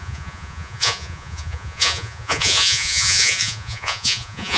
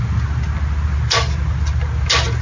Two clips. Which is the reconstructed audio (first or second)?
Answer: first